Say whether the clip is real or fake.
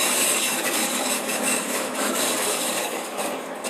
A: fake